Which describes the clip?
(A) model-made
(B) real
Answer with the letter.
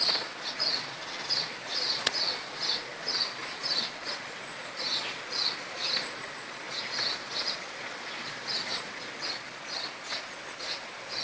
A